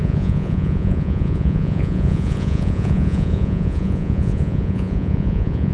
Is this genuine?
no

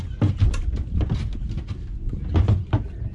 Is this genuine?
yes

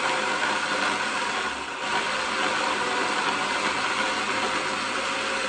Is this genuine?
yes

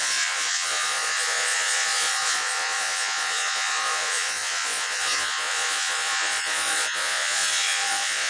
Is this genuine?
no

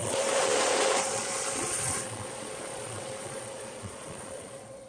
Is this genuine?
no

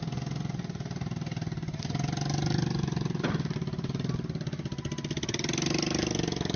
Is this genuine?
yes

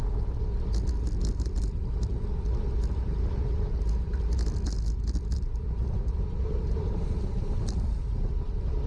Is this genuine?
yes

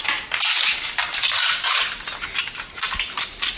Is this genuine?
yes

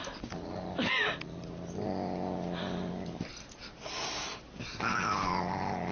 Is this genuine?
yes